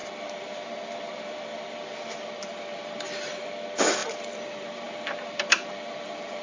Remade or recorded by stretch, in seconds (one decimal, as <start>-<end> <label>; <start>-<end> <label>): 0.0-3.5 remade; 3.5-4.0 recorded; 4.0-6.4 remade